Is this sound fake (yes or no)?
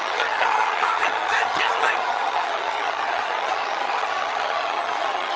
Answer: yes